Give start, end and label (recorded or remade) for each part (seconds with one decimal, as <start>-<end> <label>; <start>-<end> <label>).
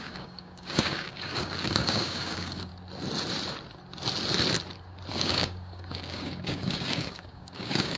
0.0-2.7 remade; 2.7-5.1 recorded; 5.1-8.0 remade